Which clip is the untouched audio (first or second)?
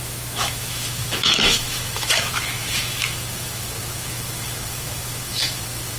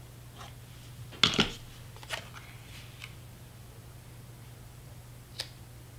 second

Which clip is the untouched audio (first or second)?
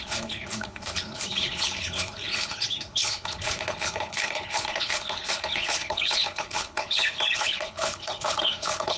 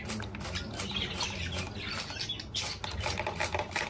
second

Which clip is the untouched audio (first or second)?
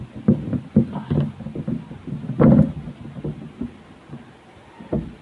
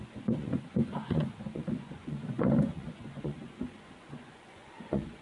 first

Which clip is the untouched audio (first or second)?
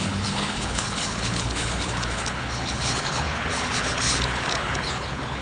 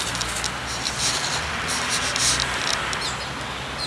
second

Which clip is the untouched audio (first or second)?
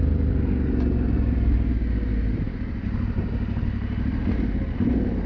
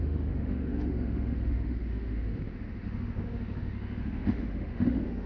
first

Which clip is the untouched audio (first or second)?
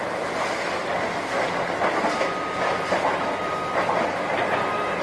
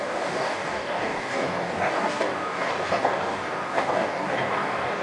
first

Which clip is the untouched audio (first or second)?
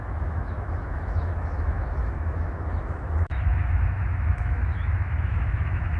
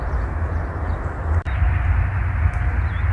second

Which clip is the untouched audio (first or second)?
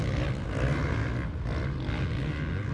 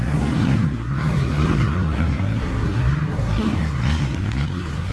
first